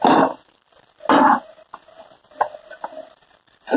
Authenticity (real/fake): real